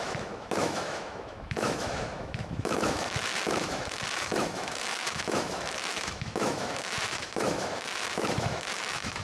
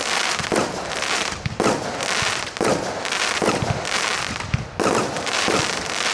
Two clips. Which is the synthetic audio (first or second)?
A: first